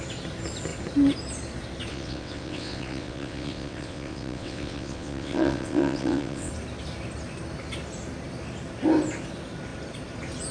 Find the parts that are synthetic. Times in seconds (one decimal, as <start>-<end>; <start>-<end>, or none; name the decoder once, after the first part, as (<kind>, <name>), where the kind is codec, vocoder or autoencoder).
1.9-6.5 (vocoder, WaveNeXt)